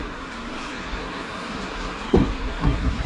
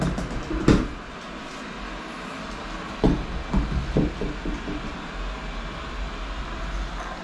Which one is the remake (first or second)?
first